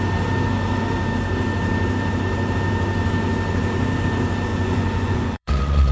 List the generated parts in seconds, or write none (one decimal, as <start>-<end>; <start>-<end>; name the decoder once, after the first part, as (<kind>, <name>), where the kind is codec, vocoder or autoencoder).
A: 4.5-5.9 (vocoder, Vocos)